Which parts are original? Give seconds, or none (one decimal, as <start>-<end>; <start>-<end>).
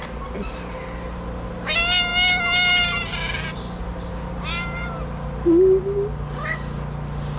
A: 0.0-7.4